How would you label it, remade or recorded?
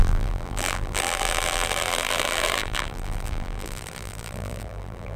remade